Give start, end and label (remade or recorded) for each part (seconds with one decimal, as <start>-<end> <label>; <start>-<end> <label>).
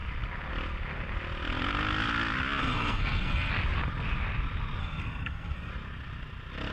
0.0-2.6 recorded; 2.6-3.5 remade; 3.5-4.8 recorded; 4.8-5.7 remade; 5.7-6.7 recorded